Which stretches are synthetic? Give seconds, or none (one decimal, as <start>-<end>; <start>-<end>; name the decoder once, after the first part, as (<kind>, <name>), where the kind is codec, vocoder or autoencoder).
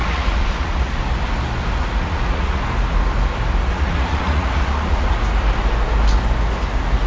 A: 0.0-1.0 (vocoder, Vocos); 1.8-2.6; 3.7-5.1